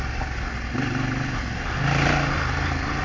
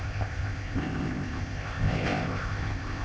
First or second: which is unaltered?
first